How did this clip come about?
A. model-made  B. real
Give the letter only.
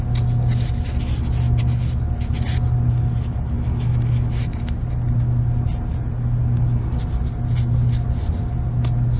B